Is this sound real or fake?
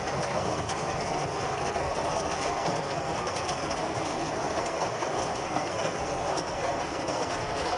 fake